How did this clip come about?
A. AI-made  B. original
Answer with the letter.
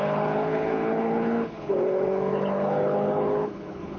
A